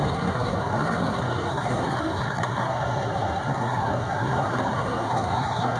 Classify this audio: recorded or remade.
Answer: remade